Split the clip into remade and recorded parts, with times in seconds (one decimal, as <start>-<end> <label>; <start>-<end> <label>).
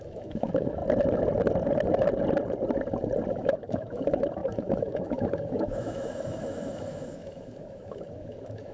0.0-0.8 remade; 0.8-3.3 recorded; 3.3-8.7 remade